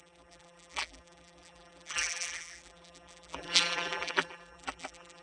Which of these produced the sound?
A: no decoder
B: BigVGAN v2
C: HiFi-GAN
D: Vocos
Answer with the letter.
B